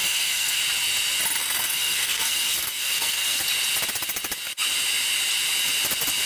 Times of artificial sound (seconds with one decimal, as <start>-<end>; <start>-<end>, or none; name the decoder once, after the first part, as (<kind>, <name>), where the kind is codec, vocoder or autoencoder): 0.0-0.6 (codec, SNAC); 1.4-3.4